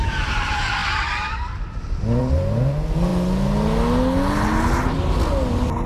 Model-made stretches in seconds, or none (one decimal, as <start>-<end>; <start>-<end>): none

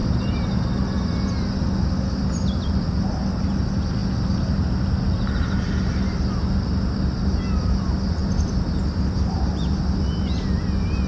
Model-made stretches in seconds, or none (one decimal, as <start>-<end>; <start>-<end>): none

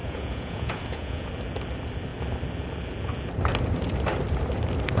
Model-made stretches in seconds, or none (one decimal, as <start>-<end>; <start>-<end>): 0.0-1.3

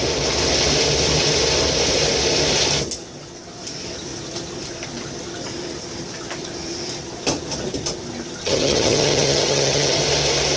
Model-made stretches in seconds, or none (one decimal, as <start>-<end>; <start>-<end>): 8.4-10.0

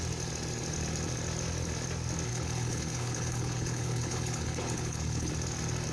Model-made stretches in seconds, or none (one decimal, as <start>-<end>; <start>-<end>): 2.3-5.3

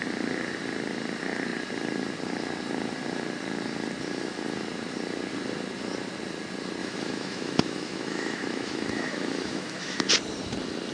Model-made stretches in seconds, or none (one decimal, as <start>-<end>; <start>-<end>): 6.8-10.1

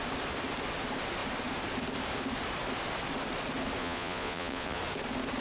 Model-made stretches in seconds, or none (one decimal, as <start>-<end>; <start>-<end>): 3.8-4.8